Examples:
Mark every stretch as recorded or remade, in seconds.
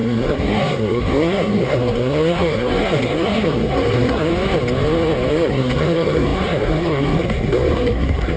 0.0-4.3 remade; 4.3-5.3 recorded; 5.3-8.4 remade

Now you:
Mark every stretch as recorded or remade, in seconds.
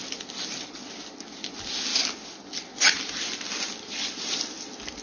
0.0-5.0 recorded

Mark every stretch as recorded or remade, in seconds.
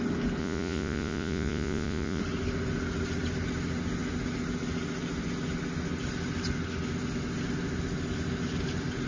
0.0-0.4 recorded; 0.4-2.2 remade; 2.2-9.1 recorded